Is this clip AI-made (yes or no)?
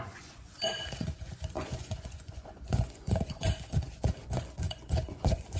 yes